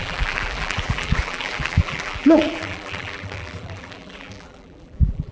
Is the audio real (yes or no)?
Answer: no